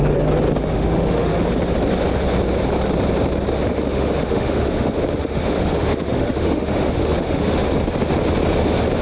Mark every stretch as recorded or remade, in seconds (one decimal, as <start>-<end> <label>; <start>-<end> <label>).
0.0-0.6 recorded; 0.6-1.4 remade; 1.4-3.7 recorded; 3.7-7.7 remade; 7.7-9.0 recorded